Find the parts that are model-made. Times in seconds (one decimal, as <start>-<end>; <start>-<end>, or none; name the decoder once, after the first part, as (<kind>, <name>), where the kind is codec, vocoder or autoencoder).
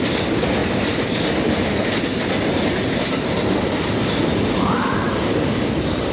0.6-1.7 (vocoder, BigVGAN v2)